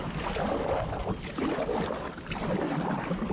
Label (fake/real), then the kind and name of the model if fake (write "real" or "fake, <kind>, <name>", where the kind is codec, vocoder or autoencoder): real